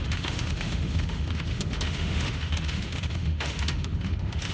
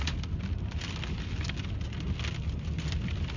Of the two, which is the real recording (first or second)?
second